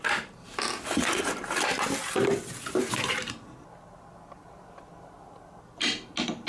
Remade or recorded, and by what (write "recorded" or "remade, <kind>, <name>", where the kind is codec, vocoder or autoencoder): recorded